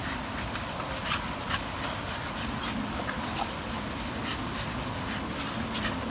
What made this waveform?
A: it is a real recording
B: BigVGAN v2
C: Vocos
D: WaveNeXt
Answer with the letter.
A